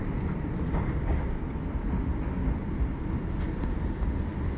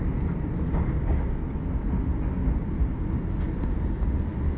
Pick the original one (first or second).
second